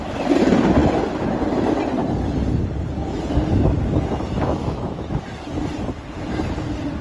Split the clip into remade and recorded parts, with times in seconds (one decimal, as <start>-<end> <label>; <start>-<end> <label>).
0.0-4.6 recorded; 4.6-5.2 remade; 5.2-7.0 recorded